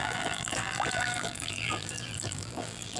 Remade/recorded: remade